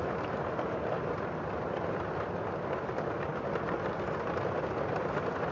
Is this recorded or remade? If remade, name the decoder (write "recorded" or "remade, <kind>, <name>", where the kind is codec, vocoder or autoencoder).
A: recorded